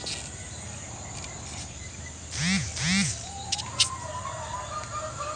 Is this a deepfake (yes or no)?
no